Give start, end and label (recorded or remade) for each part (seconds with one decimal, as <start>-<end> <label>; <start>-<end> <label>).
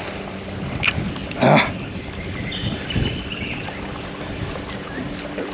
0.0-1.2 recorded; 1.2-4.5 remade; 4.5-5.5 recorded